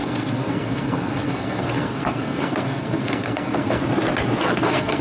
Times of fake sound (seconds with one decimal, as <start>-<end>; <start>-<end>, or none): 0.0-3.8; 4.4-5.0